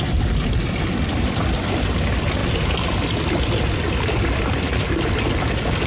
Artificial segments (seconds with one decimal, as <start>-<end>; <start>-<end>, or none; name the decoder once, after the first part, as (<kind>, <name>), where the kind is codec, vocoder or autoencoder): none